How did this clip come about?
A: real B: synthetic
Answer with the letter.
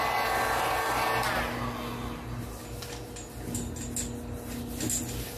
A